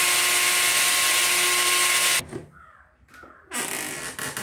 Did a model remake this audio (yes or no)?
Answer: no